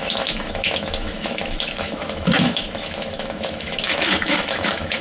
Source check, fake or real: fake